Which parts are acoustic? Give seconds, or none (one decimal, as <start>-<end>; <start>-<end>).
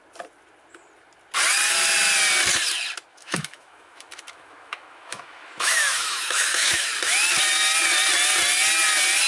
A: 0.0-3.1; 6.9-9.3